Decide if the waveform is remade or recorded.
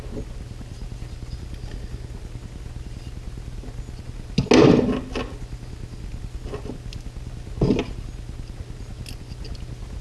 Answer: recorded